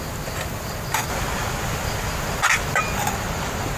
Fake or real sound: real